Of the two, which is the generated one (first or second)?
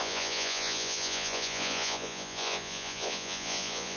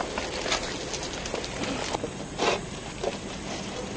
first